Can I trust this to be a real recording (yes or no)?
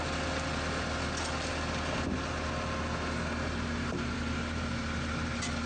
yes